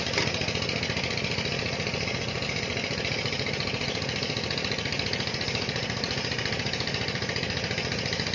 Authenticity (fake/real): real